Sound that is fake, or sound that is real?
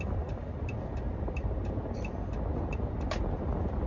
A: real